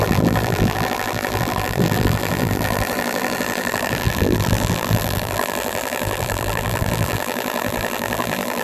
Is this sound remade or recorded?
remade